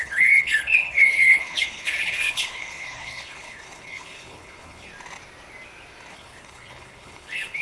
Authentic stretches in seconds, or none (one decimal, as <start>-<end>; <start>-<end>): 4.9-6.1